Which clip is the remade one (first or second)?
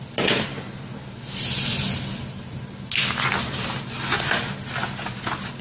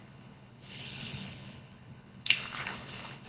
second